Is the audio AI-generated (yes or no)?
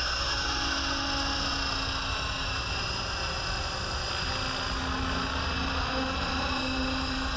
no